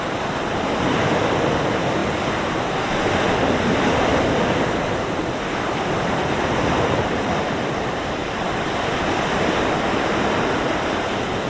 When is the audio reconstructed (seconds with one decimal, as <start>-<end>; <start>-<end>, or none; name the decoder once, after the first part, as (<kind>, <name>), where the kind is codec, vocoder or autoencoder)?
0.0-2.0 (vocoder, BigVGAN v2); 6.0-11.5